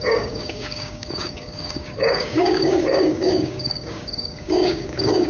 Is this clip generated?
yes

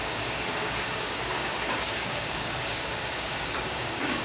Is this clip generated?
yes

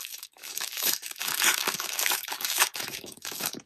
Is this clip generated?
yes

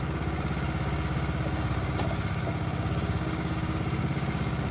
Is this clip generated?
yes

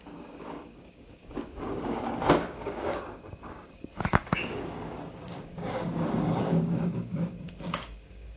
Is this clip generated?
yes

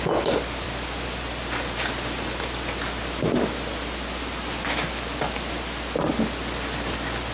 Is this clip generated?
no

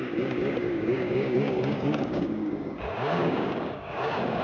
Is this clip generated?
yes